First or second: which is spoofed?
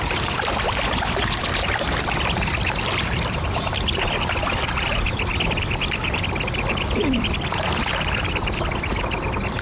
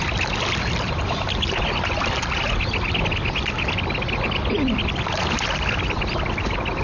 first